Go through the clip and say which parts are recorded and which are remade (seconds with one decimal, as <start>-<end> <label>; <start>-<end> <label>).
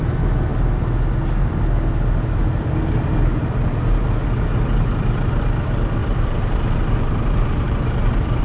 0.0-6.0 recorded; 6.0-8.4 remade